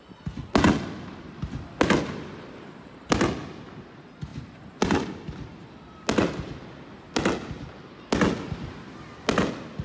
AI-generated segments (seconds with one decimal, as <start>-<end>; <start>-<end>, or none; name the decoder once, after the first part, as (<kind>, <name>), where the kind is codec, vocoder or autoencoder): 4.3-5.1 (vocoder, BigVGAN v2)